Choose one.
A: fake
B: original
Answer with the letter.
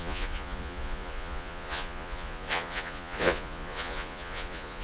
A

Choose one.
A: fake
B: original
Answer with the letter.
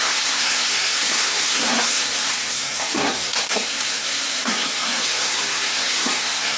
A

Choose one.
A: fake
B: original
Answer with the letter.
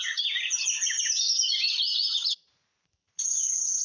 A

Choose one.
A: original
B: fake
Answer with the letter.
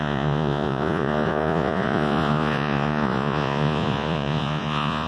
B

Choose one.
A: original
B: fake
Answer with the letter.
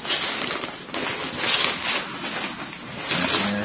A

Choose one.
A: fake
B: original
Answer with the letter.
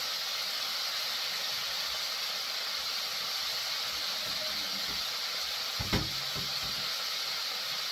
B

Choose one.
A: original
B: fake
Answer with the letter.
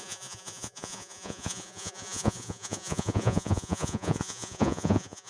B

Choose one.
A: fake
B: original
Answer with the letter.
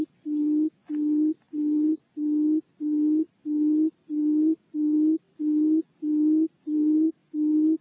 B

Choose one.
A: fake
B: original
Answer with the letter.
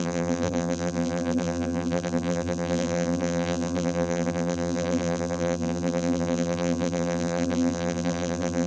A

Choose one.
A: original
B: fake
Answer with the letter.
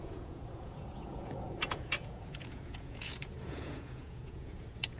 B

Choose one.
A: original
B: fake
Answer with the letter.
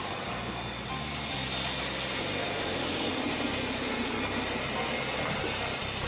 A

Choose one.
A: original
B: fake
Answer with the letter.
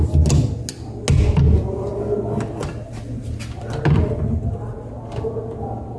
A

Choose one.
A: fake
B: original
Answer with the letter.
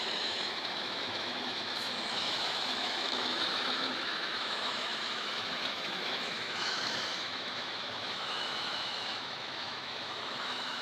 A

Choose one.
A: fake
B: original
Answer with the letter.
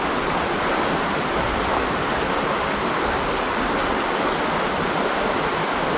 B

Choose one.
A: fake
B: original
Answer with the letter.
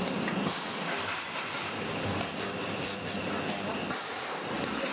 B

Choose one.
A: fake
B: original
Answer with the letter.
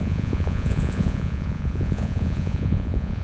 A